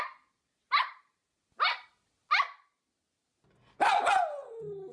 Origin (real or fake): real